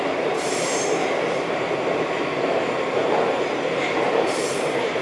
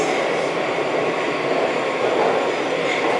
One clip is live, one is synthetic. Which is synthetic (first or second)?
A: first